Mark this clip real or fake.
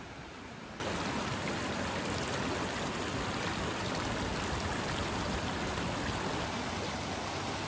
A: real